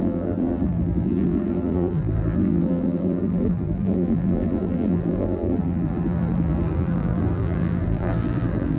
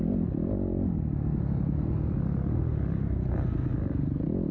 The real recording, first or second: second